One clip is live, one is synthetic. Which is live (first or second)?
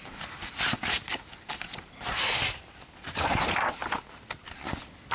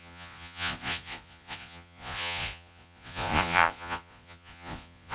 first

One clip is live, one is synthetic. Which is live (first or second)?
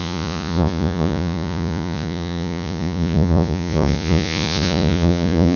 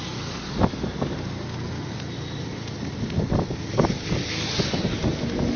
second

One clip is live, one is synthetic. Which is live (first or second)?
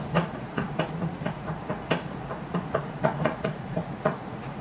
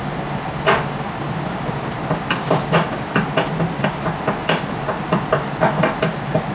second